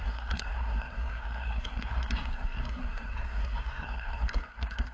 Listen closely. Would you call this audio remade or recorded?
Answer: remade